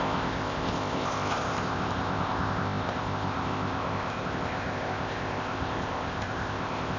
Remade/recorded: remade